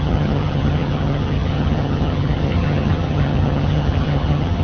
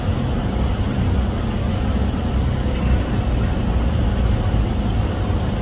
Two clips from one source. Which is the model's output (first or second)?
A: first